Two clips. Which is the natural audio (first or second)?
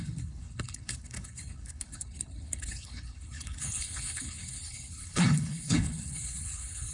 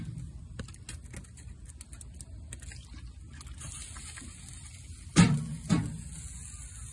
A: second